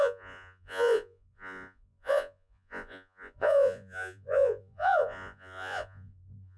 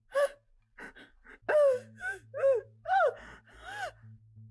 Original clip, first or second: second